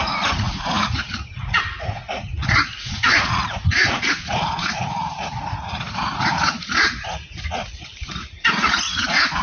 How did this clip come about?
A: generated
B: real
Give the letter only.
A